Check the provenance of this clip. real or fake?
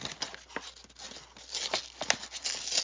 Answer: real